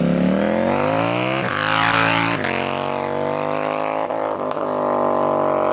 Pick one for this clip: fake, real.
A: real